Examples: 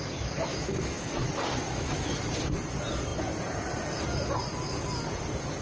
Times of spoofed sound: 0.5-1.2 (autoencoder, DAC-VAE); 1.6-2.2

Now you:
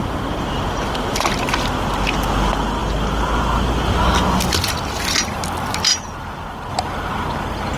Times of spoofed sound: none

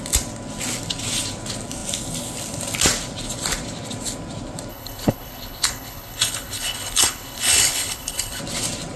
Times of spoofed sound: 4.7-8.4 (codec, HILCodec)

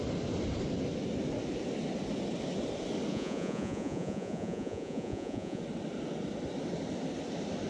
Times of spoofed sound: 3.1-5.6 (vocoder, Vocos)

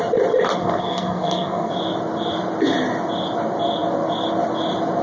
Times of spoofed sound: 0.6-1.7 (codec, SNAC)

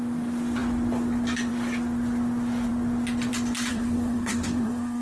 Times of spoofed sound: 3.7-5.0 (codec, SNAC)

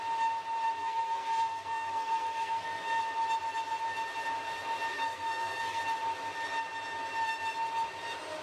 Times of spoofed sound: 0.8-3.0 (codec, SNAC); 4.9-5.8